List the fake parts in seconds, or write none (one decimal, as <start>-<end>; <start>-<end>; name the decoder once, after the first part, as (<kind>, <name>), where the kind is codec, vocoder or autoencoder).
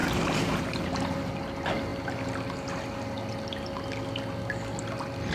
0.0-1.3 (vocoder, BigVGAN v2)